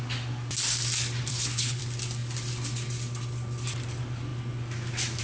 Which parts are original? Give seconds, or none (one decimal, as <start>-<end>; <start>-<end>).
0.0-1.3; 1.8-5.2

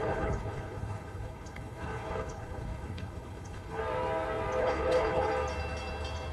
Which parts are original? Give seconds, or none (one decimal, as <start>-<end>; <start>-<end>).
3.8-4.6; 5.3-6.3

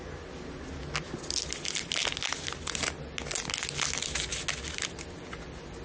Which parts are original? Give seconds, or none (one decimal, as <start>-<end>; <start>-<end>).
0.0-5.8

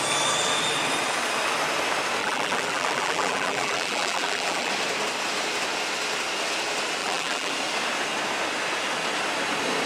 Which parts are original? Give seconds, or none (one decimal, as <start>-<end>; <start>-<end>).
0.0-2.2; 4.7-7.0; 7.5-9.9

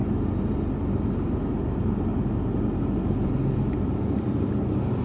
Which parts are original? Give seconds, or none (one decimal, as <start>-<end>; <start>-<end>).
0.0-5.0

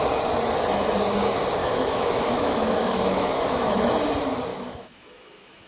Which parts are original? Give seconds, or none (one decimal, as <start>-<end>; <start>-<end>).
0.0-1.6; 3.7-4.5